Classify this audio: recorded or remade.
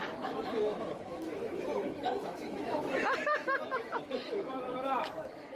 remade